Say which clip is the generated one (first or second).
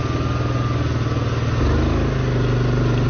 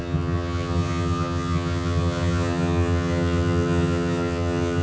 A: second